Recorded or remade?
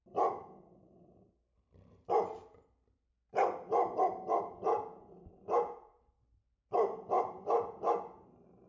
recorded